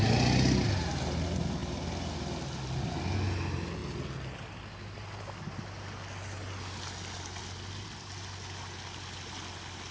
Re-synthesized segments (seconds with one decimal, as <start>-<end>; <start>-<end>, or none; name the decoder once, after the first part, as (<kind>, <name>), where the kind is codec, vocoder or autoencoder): none